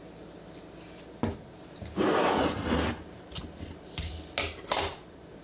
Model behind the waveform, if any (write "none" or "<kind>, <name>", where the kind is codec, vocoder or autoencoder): none